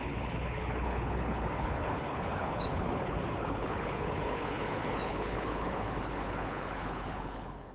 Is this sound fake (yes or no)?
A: yes